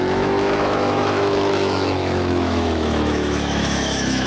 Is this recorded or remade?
remade